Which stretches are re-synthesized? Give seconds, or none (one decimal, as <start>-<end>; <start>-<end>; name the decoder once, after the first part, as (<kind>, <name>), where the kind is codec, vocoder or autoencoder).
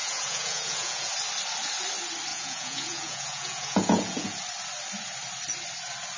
0.0-1.1 (vocoder, Vocos); 2.3-4.4